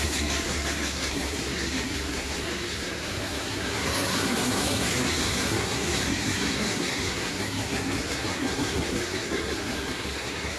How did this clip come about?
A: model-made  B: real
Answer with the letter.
A